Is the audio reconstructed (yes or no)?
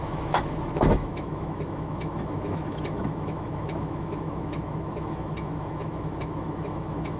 yes